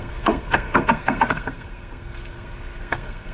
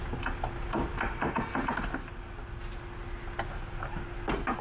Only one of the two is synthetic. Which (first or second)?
first